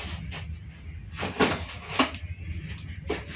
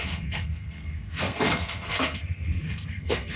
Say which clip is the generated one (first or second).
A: second